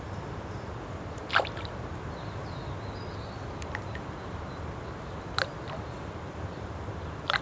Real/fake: real